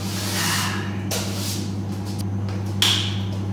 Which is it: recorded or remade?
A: recorded